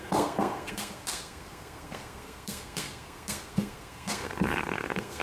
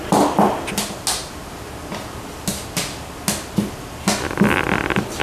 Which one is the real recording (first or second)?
second